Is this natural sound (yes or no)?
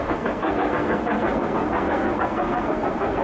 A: no